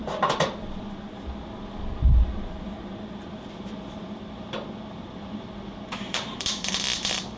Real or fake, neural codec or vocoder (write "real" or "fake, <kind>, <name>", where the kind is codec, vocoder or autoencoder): fake, vocoder, BigVGAN v2